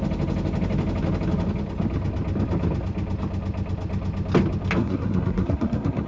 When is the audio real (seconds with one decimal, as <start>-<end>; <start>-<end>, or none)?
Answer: 0.0-4.8